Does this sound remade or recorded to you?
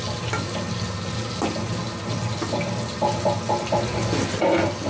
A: recorded